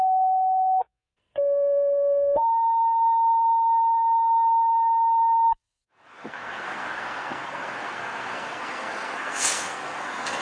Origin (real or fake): fake